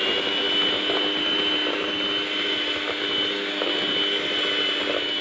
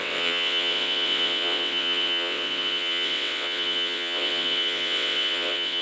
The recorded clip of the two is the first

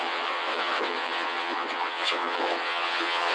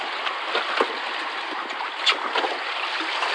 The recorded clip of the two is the second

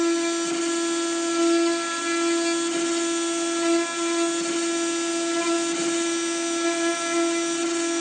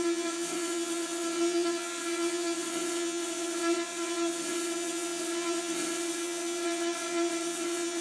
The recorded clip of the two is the first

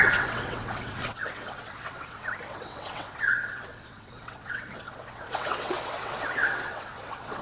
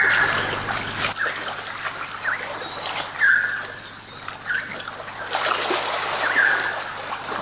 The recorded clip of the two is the second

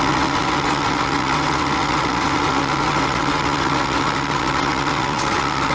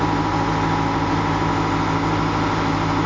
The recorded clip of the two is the second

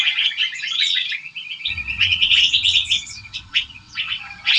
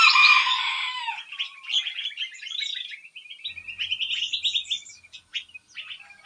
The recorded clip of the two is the second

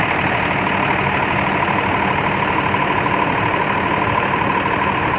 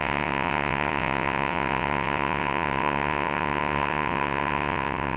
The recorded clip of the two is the first